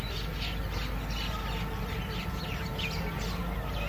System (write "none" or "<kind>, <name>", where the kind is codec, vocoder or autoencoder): none